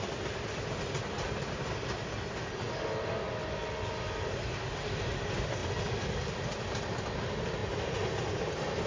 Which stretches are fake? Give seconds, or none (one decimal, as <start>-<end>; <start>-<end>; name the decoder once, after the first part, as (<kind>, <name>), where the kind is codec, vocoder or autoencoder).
none